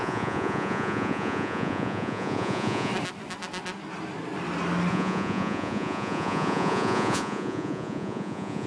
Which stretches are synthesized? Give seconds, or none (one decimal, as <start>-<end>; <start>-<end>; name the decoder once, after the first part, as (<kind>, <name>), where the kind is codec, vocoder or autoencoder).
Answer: 0.0-2.9 (vocoder, Vocos); 4.9-8.7